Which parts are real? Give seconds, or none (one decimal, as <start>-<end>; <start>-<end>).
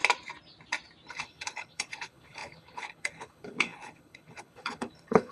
0.0-1.1